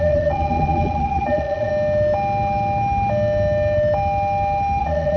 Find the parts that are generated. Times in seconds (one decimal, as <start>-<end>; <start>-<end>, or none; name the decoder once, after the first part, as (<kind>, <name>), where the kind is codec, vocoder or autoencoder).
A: 0.0-1.7 (vocoder, Vocos); 4.8-5.2